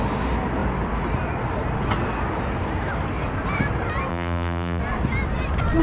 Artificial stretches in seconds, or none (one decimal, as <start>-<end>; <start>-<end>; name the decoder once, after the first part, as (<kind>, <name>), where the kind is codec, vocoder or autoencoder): 4.1-4.8 (vocoder, BigVGAN v2)